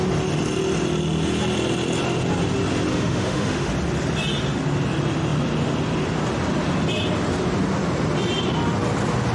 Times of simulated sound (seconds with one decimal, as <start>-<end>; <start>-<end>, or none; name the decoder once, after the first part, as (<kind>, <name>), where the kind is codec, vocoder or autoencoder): 2.9-3.7 (autoencoder, DAC-VAE)